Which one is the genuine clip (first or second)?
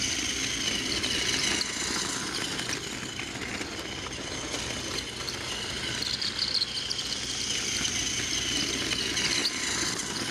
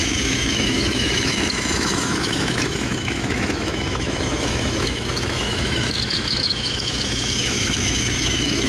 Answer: first